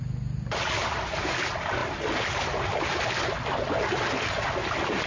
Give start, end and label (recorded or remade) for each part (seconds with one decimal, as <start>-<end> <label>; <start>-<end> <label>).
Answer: 0.0-5.1 recorded